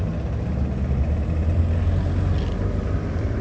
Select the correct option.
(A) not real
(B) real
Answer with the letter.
B